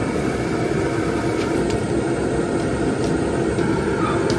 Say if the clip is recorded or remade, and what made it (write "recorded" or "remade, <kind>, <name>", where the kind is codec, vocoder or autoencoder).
recorded